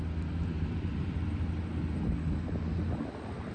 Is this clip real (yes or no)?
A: yes